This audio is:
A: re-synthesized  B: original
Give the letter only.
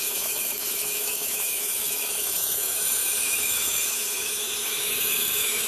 A